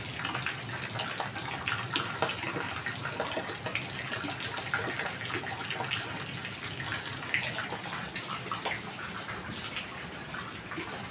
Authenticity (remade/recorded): recorded